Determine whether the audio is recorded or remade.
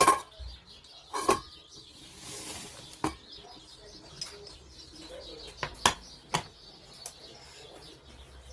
recorded